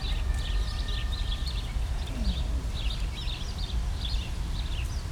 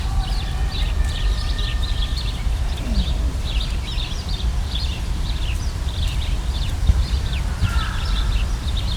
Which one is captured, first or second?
first